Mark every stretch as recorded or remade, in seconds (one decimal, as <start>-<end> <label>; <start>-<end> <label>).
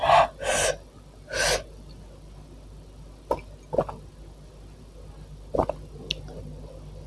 0.0-7.1 recorded